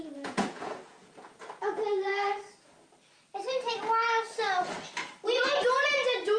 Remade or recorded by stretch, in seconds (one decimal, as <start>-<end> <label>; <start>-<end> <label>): 0.0-2.1 remade; 2.1-5.9 recorded; 5.9-6.4 remade